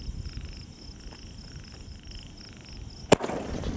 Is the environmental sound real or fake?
real